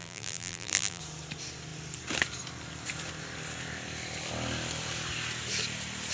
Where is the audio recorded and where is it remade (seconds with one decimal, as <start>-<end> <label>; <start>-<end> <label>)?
0.0-1.0 remade; 1.0-6.1 recorded